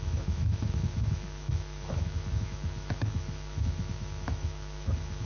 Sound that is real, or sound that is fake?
fake